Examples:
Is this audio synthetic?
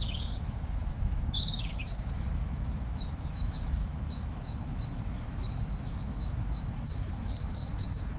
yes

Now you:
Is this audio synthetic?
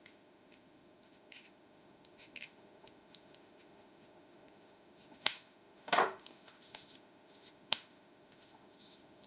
yes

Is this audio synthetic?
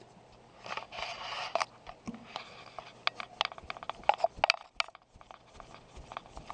no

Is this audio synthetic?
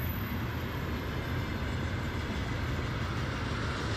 no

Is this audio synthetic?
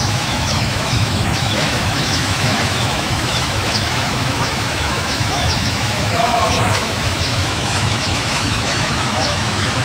yes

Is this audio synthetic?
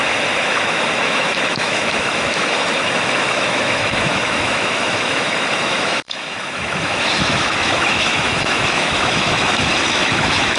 yes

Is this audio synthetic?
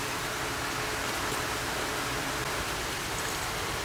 no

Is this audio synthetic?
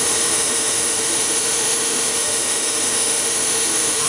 yes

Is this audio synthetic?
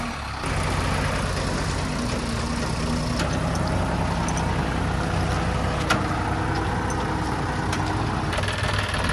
no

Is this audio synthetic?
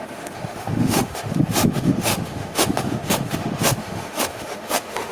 yes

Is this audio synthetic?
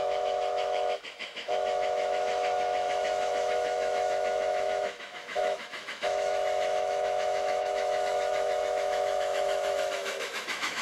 yes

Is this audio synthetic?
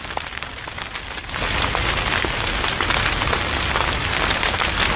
no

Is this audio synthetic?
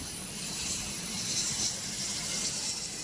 no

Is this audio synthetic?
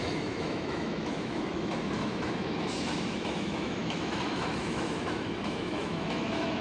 yes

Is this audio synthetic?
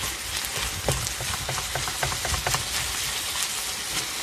no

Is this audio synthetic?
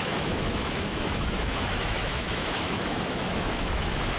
yes